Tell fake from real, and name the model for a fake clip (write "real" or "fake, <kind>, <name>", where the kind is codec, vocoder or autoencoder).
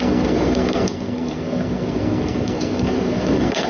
fake, codec, SNAC